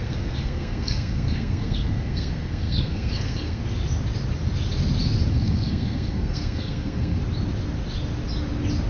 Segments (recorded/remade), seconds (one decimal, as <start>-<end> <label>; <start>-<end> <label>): 0.0-3.6 remade; 3.6-5.3 recorded; 5.3-7.2 remade; 7.2-8.9 recorded